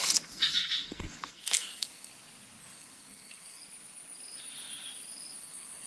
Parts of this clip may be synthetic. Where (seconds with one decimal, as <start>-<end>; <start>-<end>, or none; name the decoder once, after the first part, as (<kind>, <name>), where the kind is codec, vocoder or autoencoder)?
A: 0.0-2.1 (codec, SNAC); 2.6-3.6; 5.4-5.9